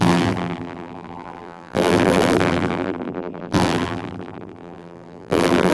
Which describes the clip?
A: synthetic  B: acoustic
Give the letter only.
A